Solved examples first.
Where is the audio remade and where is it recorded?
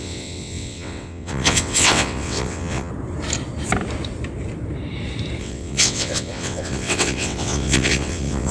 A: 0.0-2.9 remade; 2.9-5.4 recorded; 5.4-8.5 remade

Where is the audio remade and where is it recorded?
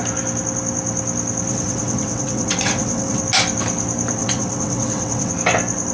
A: 0.0-1.5 recorded; 1.5-3.2 remade; 3.2-4.2 recorded; 4.2-5.3 remade; 5.3-5.9 recorded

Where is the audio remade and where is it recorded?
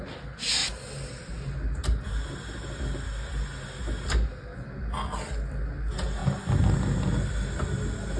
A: 0.0-8.2 recorded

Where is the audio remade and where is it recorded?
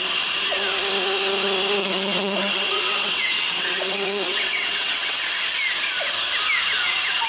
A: 0.0-1.8 recorded; 1.8-5.2 remade; 5.2-7.3 recorded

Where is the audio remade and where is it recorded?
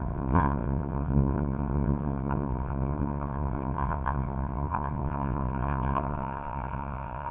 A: 0.0-7.3 remade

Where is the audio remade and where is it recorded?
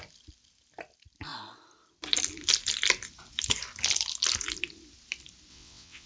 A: 0.0-5.5 recorded; 5.5-6.1 remade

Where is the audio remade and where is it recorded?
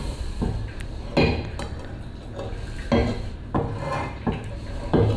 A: 0.0-5.2 recorded